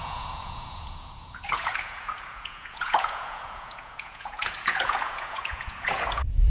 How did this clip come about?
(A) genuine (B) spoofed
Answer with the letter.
B